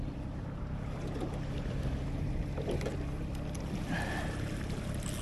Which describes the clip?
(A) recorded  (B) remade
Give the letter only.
B